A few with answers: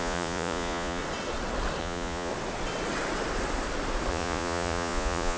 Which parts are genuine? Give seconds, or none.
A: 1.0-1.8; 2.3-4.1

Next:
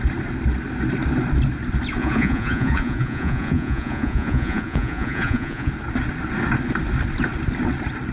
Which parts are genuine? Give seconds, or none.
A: 0.0-2.0; 5.7-8.1

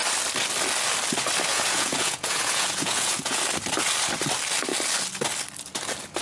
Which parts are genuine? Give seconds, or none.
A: 0.0-1.5; 3.4-6.2

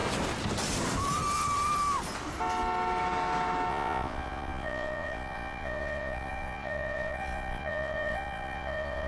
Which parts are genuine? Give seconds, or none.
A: 0.0-3.7

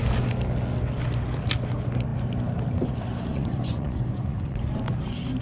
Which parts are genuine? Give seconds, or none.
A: 0.0-3.3; 4.7-5.4

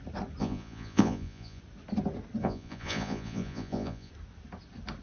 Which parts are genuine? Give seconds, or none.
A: 0.0-0.4; 1.6-2.4; 4.1-5.0